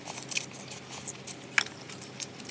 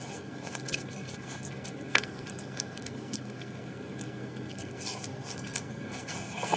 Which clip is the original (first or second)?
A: first